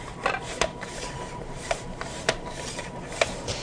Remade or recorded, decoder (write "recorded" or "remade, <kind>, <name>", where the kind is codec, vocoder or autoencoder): remade, vocoder, BigVGAN v2